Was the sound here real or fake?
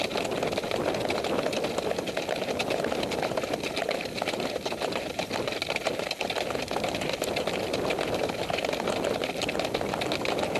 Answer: real